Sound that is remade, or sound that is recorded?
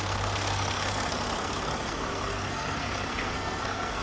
remade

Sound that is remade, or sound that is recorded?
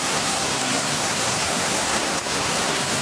remade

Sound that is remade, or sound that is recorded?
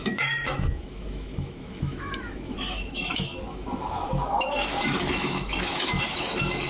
remade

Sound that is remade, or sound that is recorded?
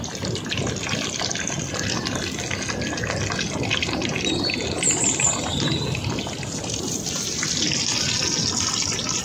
recorded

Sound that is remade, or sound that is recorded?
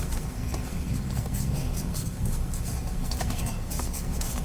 remade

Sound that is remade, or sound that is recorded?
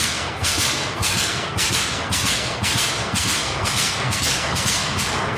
remade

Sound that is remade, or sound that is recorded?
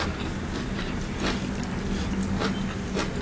recorded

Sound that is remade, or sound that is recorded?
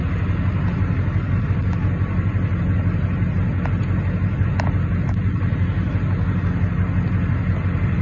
recorded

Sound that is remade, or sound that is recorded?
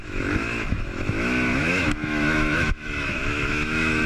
remade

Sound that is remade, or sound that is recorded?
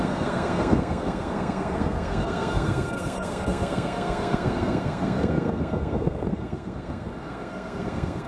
remade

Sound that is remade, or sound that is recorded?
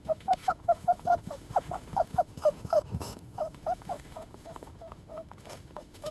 remade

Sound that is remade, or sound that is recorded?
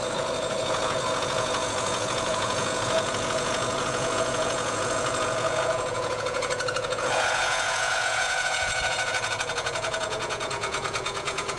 remade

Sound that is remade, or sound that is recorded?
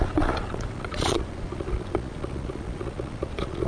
remade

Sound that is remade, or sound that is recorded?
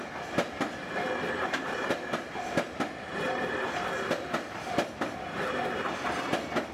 recorded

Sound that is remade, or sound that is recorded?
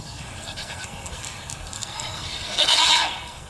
remade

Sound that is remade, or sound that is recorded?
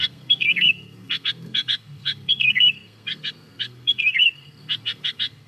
remade